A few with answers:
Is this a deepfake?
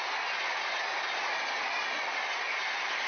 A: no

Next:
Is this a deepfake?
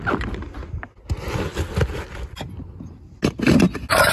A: no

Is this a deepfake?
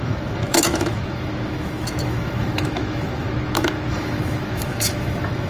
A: yes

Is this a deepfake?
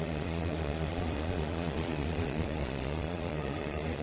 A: yes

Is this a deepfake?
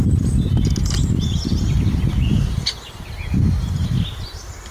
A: no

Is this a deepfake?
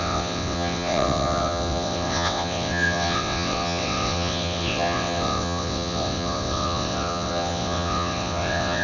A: yes